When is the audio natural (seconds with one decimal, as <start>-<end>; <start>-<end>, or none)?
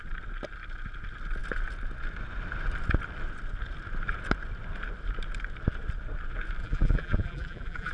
0.0-6.6